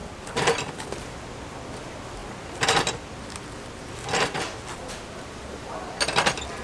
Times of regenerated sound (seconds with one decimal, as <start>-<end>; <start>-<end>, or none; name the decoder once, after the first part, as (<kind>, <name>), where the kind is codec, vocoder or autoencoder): none